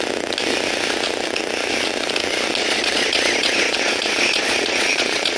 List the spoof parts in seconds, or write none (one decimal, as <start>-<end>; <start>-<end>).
2.6-5.4

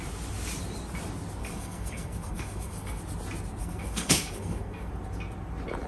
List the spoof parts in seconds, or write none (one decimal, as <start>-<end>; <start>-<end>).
1.4-3.0; 3.6-4.9

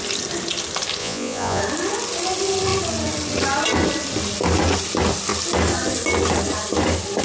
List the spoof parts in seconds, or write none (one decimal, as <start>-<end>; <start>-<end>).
1.0-1.6